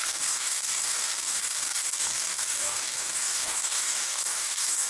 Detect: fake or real fake